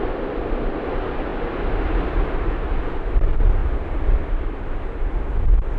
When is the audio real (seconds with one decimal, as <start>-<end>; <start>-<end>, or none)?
0.0-5.8